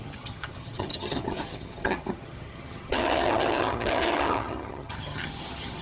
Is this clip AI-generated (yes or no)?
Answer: yes